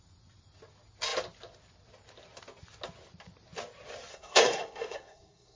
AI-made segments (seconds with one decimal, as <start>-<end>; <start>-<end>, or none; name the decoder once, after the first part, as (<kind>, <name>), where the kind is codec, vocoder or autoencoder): 4.1-5.6 (codec, SNAC)